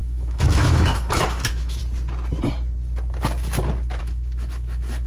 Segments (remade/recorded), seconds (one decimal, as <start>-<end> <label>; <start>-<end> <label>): 0.0-1.8 remade; 1.8-4.0 recorded; 4.0-5.1 remade